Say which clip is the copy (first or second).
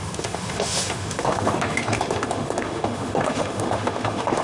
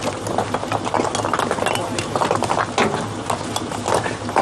first